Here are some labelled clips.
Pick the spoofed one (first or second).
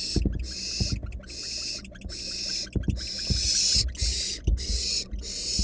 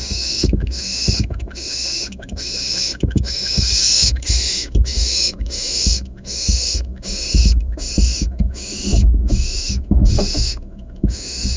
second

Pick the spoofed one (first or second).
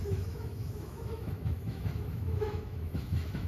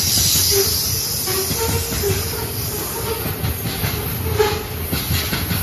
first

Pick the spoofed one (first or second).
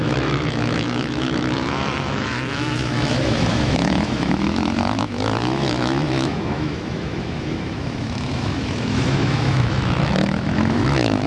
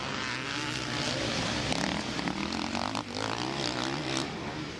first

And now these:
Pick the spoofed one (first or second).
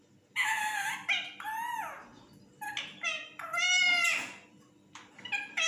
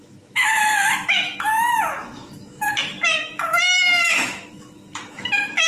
second